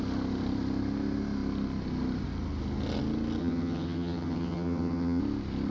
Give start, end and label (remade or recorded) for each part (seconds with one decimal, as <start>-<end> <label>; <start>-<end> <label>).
0.0-3.4 recorded; 3.4-5.2 remade; 5.2-5.7 recorded